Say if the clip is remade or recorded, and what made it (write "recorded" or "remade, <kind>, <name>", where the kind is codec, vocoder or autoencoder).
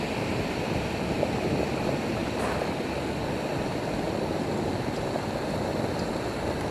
recorded